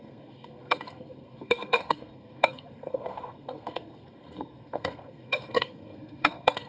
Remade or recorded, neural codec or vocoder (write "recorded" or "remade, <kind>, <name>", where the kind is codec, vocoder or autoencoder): remade, codec, SNAC